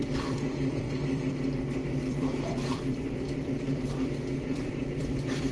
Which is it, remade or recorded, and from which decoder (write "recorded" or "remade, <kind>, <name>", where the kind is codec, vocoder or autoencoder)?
remade, vocoder, BigVGAN v2